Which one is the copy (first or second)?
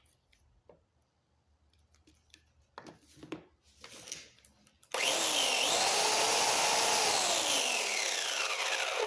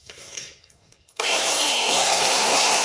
second